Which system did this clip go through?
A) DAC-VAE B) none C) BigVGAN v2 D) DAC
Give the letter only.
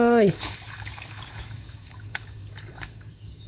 D